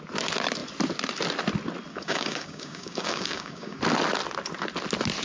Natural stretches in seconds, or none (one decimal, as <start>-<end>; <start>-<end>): 0.0-1.9; 3.8-5.2